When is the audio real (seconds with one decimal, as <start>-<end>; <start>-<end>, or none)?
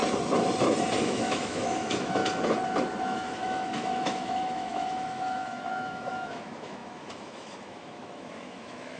0.0-1.0; 2.2-3.0